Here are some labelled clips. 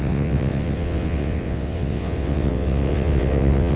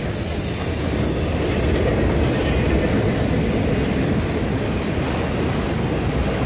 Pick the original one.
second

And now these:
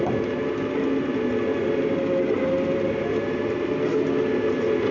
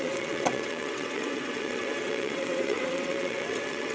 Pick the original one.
first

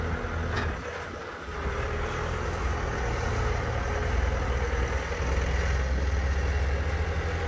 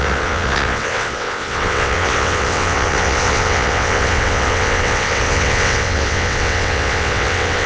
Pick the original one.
first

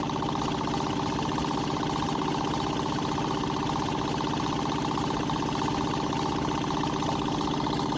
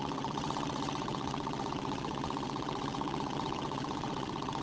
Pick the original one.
first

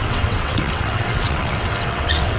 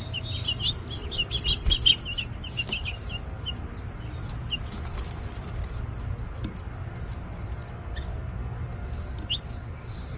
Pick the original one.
second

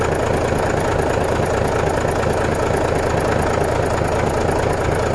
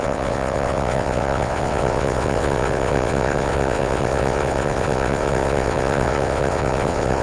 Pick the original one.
first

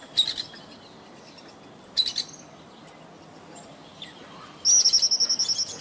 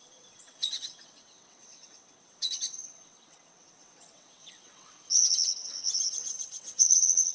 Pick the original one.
first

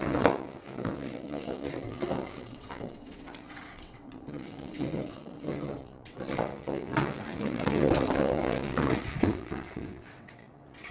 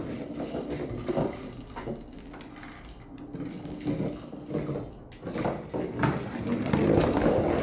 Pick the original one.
second